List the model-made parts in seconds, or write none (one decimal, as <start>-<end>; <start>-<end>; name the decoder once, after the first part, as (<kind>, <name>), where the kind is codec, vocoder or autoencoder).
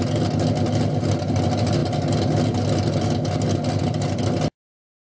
none